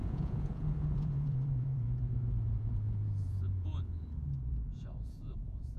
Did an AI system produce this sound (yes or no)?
yes